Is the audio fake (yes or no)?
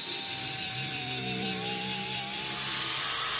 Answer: yes